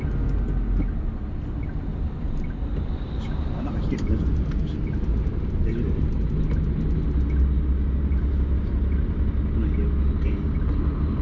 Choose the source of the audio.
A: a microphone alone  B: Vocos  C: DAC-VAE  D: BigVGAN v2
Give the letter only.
A